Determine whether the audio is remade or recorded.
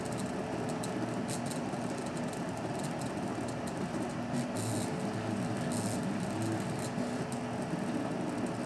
recorded